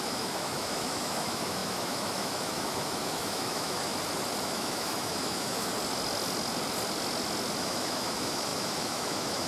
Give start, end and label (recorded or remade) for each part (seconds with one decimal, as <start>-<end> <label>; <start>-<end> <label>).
0.0-3.9 remade; 3.9-4.4 recorded; 4.4-5.7 remade; 5.7-7.6 recorded; 7.6-9.5 remade